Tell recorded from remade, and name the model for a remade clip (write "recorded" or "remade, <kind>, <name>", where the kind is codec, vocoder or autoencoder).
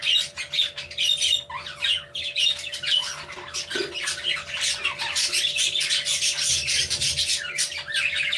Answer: recorded